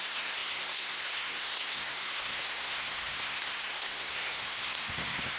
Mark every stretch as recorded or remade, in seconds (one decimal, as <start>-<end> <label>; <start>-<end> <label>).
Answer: 0.0-5.4 remade